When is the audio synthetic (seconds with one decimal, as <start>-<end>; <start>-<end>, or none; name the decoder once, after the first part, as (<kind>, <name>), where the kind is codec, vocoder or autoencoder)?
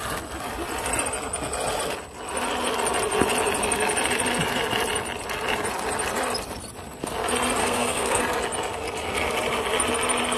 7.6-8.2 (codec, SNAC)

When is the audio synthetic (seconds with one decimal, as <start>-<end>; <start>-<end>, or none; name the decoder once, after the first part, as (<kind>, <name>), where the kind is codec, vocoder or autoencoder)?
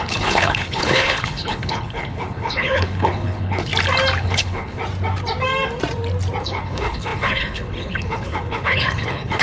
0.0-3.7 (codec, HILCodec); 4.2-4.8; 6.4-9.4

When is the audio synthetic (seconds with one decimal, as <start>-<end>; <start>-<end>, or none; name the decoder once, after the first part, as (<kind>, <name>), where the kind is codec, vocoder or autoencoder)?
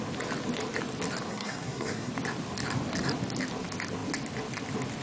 1.3-2.1 (codec, SNAC)